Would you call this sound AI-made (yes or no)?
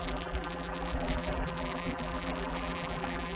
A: yes